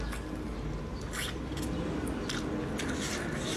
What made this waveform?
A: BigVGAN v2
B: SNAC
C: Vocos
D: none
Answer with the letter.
D